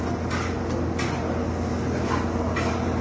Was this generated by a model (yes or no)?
no